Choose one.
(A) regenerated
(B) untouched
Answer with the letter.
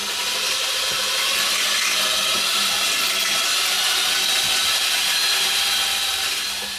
B